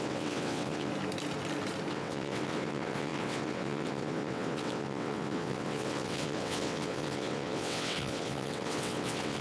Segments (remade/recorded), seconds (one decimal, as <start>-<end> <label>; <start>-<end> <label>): 0.0-0.9 remade; 0.9-1.9 recorded; 1.9-9.4 remade